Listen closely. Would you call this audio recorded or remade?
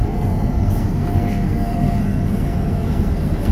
remade